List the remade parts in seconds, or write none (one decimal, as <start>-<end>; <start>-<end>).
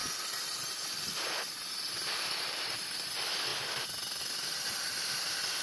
0.6-3.5; 4.2-5.6